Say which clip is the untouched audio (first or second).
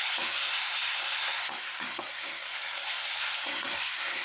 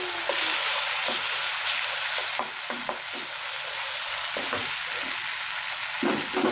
second